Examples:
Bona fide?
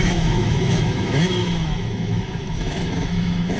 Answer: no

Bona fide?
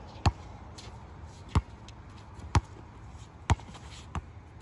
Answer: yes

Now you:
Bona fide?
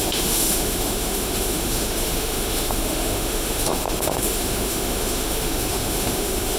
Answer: no